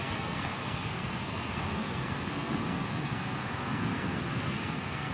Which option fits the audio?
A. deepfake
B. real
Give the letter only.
A